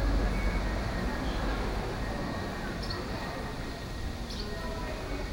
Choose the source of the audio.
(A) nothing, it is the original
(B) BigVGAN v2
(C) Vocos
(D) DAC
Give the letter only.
A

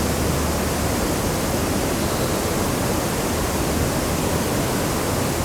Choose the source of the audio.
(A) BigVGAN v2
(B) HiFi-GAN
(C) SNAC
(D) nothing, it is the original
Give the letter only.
D